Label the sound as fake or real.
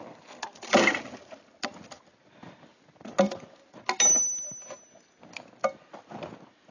real